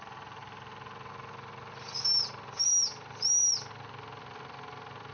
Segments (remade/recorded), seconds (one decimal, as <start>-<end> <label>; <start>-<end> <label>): 0.0-5.1 recorded